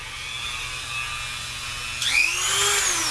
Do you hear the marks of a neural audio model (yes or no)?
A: no